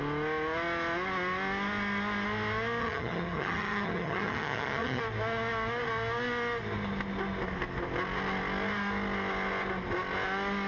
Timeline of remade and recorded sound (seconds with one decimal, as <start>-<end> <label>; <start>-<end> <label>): 0.0-2.8 recorded; 2.8-5.0 remade; 5.0-10.7 recorded